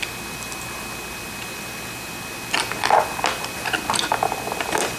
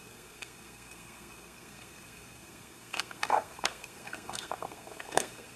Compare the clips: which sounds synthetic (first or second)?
second